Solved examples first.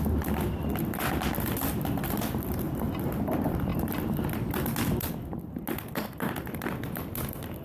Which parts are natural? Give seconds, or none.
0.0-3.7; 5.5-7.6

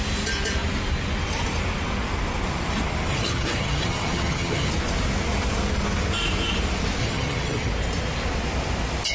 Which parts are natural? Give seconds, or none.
0.0-3.1; 4.7-7.0; 7.7-9.1

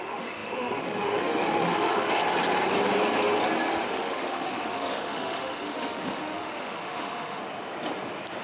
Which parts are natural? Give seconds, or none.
2.2-3.9; 7.4-8.4

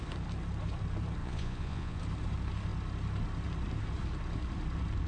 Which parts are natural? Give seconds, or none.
0.0-1.2; 2.0-5.1

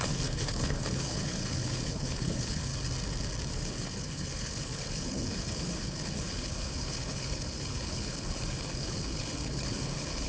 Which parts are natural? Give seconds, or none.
2.7-3.5

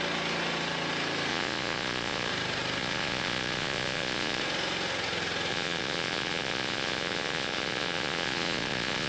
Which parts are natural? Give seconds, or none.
0.0-1.3; 2.3-2.8; 4.4-5.5

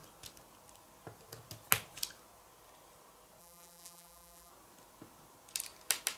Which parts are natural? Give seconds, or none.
0.0-3.4; 4.5-6.2